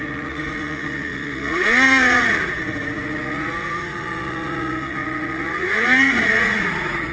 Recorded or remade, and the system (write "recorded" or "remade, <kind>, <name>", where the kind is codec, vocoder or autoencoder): remade, vocoder, Vocos